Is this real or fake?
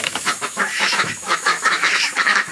fake